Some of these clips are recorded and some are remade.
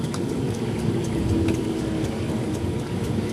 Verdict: remade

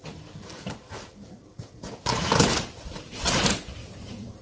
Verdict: remade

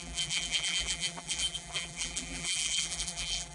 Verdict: remade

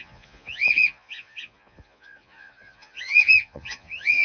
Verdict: remade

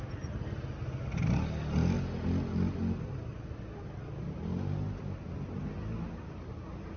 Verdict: recorded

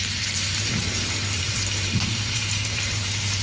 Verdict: remade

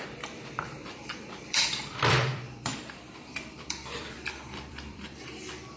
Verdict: remade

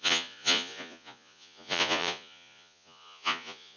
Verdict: remade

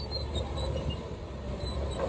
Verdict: remade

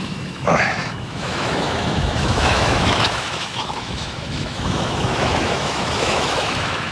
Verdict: remade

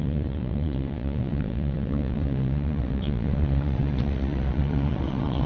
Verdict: remade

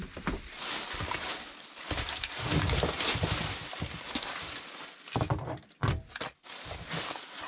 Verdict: recorded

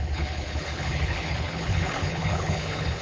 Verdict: remade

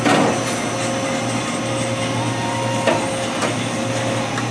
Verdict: recorded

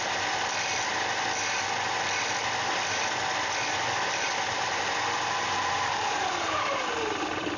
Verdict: recorded